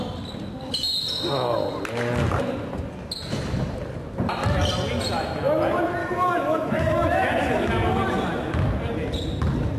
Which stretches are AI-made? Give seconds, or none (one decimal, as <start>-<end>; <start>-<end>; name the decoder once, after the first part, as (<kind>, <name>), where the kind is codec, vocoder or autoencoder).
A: 6.0-7.7 (autoencoder, DAC-VAE)